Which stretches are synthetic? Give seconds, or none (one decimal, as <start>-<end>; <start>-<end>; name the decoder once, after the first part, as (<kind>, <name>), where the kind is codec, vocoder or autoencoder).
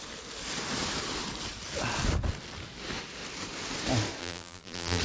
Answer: 4.2-5.0 (vocoder, BigVGAN v2)